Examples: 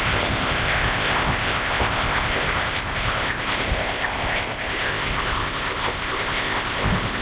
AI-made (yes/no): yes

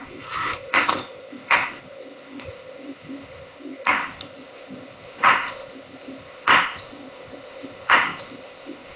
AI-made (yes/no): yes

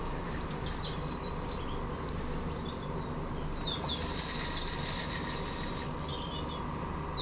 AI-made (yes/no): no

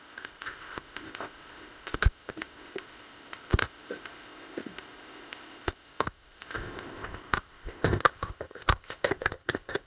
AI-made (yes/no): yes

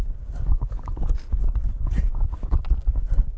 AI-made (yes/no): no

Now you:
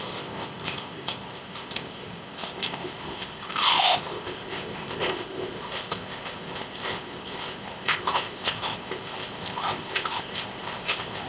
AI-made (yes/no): yes